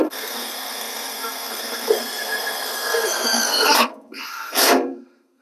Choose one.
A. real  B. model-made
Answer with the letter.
B